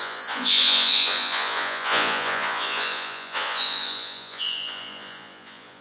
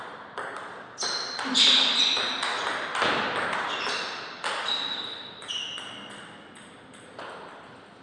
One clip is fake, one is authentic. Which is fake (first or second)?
first